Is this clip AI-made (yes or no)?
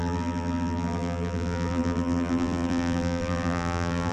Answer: yes